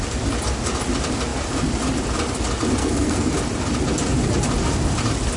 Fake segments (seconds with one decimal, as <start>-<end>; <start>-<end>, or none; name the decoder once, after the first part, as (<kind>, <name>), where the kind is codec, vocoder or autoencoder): 2.8-3.3 (codec, SNAC)